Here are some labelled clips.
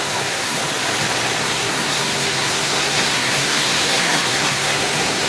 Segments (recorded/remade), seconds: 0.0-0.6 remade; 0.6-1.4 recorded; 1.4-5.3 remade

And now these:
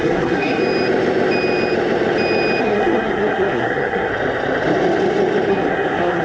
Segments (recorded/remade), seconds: 0.0-0.6 remade; 0.6-2.6 recorded; 2.6-4.1 remade; 4.1-5.5 recorded; 5.5-6.2 remade

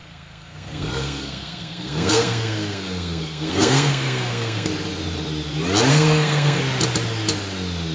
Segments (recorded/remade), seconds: 0.0-4.7 remade; 4.7-5.9 recorded; 5.9-6.6 remade; 6.6-7.9 recorded